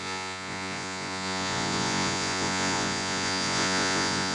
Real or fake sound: fake